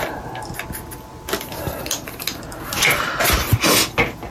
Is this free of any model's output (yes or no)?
yes